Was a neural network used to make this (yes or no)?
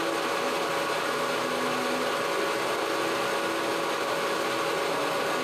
no